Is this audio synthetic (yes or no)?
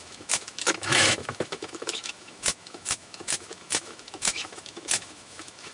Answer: yes